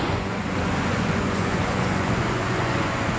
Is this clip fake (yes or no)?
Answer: yes